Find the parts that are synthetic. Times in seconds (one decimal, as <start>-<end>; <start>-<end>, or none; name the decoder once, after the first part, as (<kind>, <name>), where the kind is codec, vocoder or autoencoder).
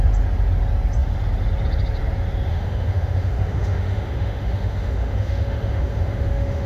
2.5-6.7 (autoencoder, DAC-VAE)